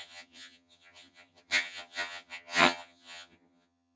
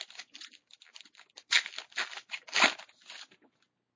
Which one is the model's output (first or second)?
first